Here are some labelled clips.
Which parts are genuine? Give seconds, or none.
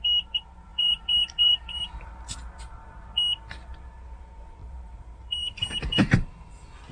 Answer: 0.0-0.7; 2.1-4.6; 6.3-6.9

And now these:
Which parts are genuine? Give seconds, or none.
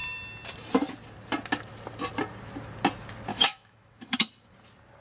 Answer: 0.0-3.3; 4.3-5.0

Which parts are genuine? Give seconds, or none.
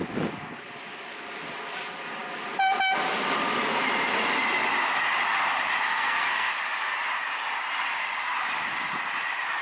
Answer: 0.0-5.9; 6.5-9.6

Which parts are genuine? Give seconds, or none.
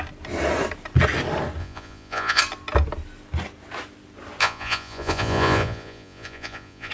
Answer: 0.0-1.6; 2.4-4.4